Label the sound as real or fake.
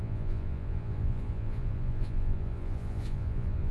fake